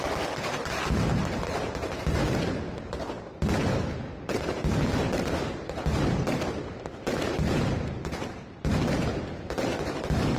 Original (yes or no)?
yes